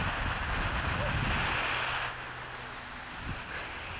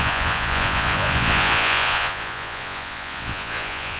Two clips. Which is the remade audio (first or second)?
second